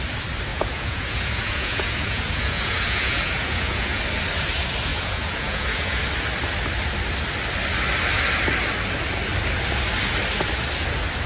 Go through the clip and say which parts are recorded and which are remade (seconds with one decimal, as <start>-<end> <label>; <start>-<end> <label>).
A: 0.0-0.5 recorded; 0.5-4.0 remade; 4.0-4.9 recorded; 4.9-6.0 remade; 6.0-11.3 recorded